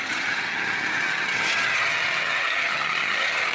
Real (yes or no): no